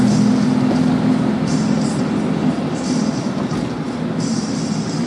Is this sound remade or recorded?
recorded